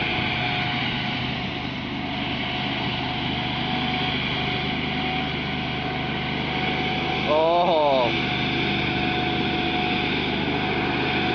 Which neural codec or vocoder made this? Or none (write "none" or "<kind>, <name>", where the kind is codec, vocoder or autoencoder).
none